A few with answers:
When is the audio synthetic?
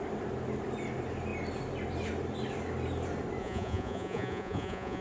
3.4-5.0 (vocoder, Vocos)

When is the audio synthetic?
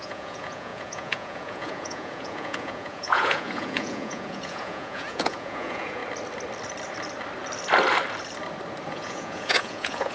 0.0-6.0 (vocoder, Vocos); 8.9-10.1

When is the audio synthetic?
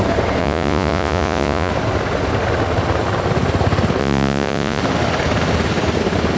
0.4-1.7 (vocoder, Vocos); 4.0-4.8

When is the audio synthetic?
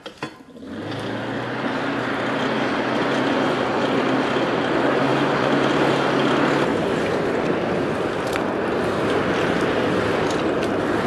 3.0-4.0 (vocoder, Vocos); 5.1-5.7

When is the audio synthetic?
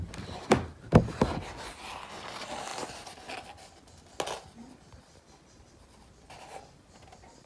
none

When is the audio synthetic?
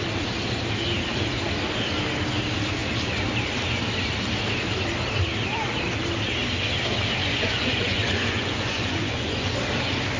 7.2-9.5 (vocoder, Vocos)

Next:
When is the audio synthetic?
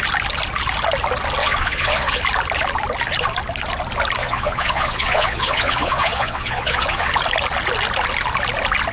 1.4-2.2 (vocoder, Vocos); 4.2-7.1